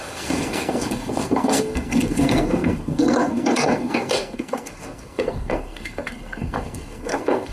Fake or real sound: fake